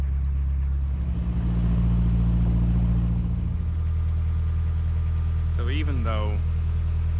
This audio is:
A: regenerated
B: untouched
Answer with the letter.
B